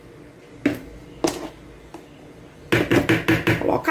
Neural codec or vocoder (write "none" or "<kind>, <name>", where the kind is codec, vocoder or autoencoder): none